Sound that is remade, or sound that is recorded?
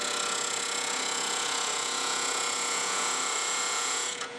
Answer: remade